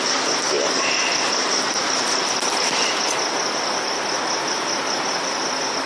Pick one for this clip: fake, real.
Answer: real